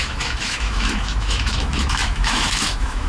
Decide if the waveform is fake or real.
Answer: fake